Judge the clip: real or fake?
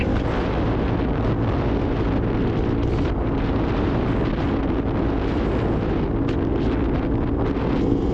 real